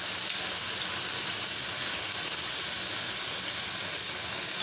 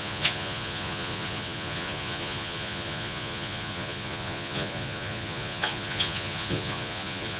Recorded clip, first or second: first